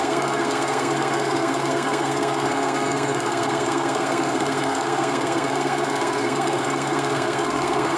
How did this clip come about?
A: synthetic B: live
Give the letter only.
A